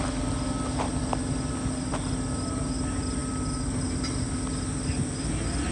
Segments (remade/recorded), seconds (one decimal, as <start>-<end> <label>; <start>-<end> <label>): 0.0-5.7 recorded